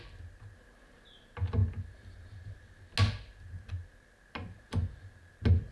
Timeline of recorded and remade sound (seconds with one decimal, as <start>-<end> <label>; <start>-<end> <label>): 0.0-5.7 recorded